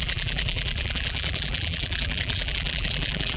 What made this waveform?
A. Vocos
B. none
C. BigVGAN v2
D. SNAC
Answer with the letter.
C